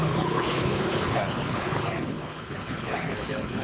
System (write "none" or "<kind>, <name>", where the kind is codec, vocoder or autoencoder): codec, HILCodec